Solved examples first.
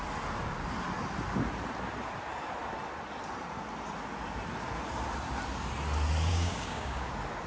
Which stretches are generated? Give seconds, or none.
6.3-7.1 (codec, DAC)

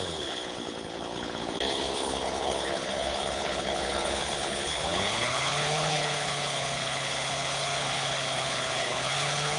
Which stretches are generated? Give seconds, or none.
0.0-9.6 (codec, HILCodec)

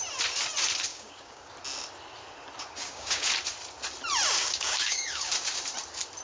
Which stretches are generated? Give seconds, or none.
0.9-1.5 (codec, DAC); 2.8-3.3; 4.4-5.3

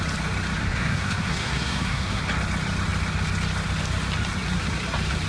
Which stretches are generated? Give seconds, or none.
0.6-2.2 (codec, SNAC)

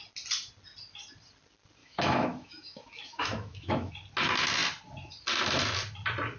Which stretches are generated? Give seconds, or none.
1.8-3.9 (autoencoder, DAC-VAE)